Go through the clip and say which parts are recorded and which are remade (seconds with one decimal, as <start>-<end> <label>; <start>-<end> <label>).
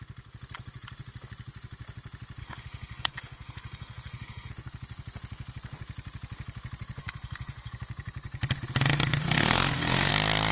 0.0-2.4 recorded; 2.4-4.5 remade; 4.5-7.0 recorded; 7.0-7.7 remade; 7.7-9.2 recorded; 9.2-10.1 remade; 10.1-10.5 recorded